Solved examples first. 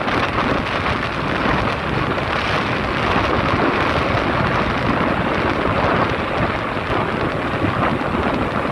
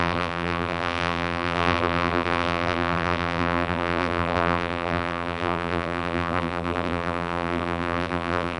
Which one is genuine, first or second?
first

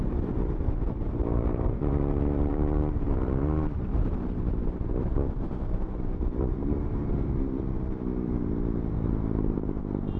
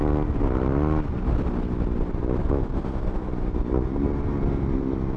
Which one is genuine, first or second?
second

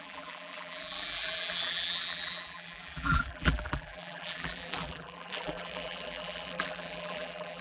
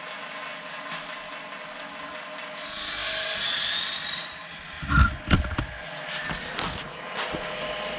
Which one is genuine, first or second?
second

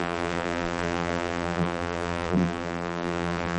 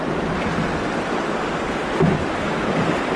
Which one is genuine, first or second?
second